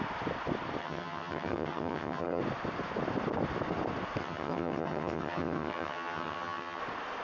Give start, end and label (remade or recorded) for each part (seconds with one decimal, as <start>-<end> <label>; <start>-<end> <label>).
0.0-0.8 recorded; 0.8-2.4 remade; 2.4-4.2 recorded; 4.2-6.8 remade; 6.8-7.2 recorded